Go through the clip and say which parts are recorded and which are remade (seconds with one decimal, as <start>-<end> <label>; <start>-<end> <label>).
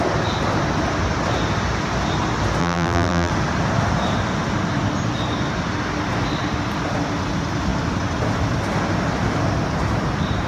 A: 0.0-2.6 recorded; 2.6-3.3 remade; 3.3-10.5 recorded